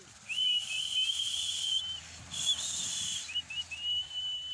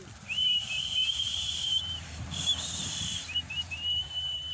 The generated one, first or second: second